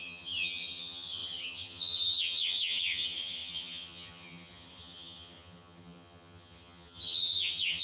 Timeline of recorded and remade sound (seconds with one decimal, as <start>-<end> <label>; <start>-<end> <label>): 0.0-7.8 remade